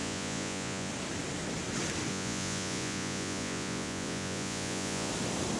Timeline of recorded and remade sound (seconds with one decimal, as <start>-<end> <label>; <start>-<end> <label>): 0.0-0.9 remade; 0.9-2.1 recorded; 2.1-5.1 remade; 5.1-5.6 recorded